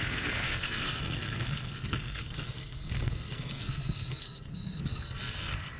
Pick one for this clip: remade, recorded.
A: remade